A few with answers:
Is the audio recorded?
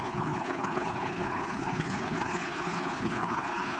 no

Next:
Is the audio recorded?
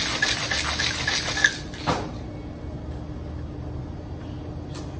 yes